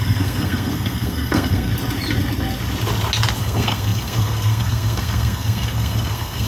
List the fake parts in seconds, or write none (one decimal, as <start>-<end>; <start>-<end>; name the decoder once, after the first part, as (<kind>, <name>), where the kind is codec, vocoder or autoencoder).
0.0-1.7 (codec, SNAC); 3.4-6.5